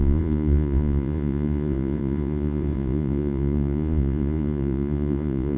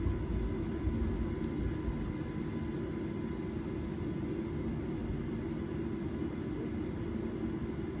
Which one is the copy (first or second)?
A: first